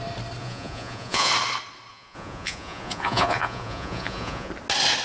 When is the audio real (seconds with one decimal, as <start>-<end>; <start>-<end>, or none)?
0.0-0.4; 1.3-1.9; 4.5-5.0